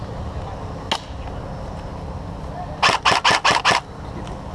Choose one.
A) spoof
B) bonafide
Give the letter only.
B